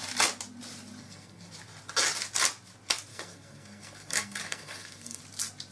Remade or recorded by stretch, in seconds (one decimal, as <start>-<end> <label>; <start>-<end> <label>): 0.0-1.0 recorded; 1.0-1.5 remade; 1.5-3.1 recorded; 3.1-5.2 remade; 5.2-5.7 recorded